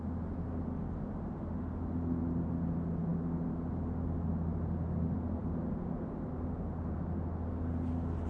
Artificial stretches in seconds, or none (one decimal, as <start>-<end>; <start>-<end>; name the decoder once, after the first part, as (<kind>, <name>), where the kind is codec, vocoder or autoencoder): none